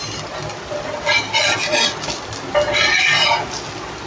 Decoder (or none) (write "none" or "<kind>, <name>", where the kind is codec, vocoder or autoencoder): none